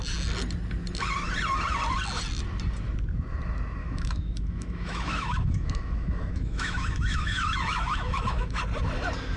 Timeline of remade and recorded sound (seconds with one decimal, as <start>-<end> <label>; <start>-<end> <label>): 0.0-3.8 recorded; 3.8-8.6 remade; 8.6-9.4 recorded